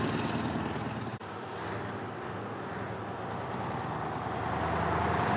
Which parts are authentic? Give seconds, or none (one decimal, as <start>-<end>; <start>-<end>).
0.0-5.4